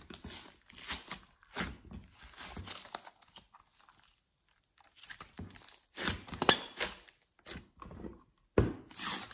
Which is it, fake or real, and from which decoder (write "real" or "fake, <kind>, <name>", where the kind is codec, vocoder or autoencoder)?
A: real